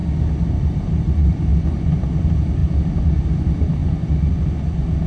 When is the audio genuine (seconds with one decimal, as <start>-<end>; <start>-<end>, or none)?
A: 0.0-0.5; 1.5-2.0; 2.6-3.2; 3.8-4.3